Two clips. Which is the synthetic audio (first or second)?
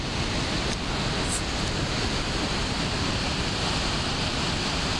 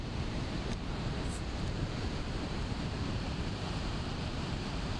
second